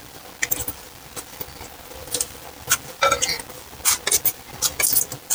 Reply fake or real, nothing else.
real